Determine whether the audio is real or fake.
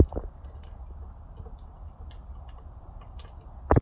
real